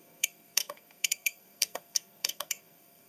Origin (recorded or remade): remade